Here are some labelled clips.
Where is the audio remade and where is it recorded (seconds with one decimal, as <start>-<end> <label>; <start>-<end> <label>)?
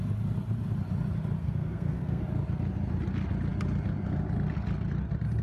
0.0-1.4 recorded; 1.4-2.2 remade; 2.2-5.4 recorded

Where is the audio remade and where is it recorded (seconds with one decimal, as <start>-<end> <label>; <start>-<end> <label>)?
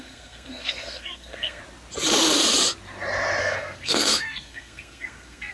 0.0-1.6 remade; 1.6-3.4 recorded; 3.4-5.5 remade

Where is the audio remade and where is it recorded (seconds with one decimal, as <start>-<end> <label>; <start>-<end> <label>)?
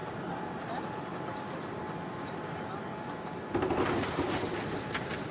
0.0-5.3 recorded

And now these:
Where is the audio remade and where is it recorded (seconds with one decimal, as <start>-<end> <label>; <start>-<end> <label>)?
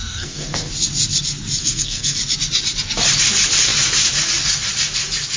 0.0-0.7 remade; 0.7-1.6 recorded; 1.6-2.2 remade; 2.2-5.4 recorded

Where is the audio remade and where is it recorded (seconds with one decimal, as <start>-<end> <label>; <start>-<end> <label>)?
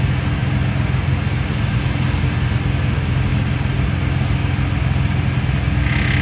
0.0-6.2 recorded